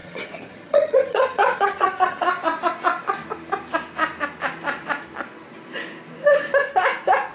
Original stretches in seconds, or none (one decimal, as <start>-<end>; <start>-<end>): 2.3-7.3